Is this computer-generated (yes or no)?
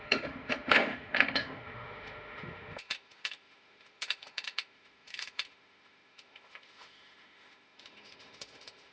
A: yes